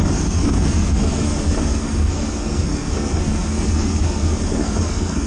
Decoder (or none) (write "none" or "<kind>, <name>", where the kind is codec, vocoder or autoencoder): codec, SNAC